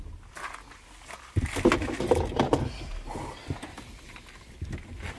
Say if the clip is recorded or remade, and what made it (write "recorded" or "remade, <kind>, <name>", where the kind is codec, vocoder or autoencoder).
recorded